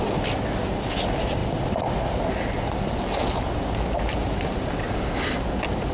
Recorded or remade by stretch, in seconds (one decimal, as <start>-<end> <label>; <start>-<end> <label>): 0.0-5.9 recorded